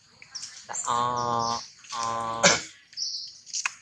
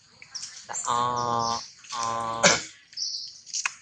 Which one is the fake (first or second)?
second